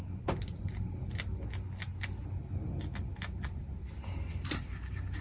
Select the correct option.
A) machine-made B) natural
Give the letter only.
B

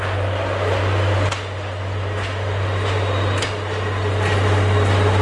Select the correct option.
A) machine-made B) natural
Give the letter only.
B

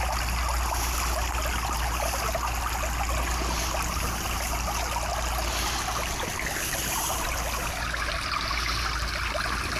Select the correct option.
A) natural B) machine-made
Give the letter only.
A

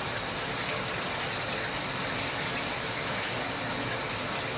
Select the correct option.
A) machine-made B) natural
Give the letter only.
B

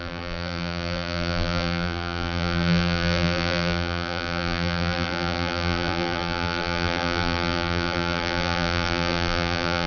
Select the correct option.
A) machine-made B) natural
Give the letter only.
A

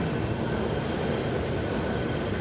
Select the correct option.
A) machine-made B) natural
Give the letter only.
B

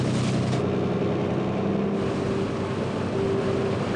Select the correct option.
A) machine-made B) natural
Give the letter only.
B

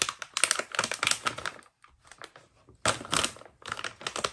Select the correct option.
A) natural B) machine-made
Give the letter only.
A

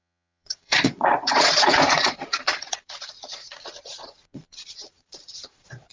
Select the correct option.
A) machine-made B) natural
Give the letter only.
A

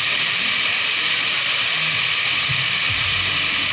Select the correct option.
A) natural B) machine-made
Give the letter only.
A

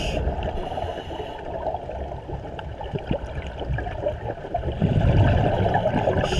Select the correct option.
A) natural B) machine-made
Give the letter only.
A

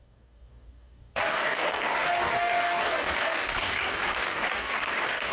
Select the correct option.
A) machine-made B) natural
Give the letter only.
A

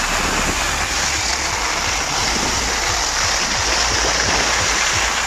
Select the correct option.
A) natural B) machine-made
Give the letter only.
A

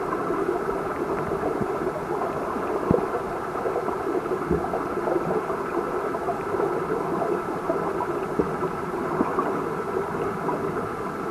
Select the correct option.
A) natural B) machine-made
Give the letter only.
A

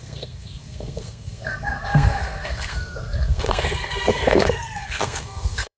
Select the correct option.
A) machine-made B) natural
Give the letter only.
A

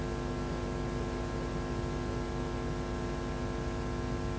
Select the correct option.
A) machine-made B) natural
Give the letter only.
B